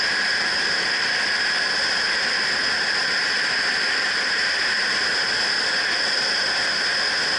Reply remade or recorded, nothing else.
recorded